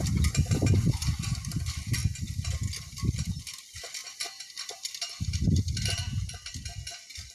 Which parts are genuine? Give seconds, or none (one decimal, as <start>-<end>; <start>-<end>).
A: 0.0-4.0; 5.9-7.3